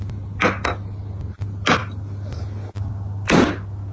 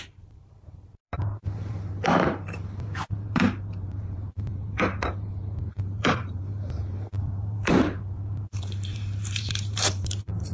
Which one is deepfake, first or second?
second